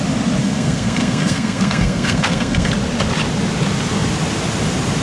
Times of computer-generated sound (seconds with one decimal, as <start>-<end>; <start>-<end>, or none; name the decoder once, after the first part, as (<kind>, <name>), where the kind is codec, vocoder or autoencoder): 0.4-2.7 (codec, SNAC)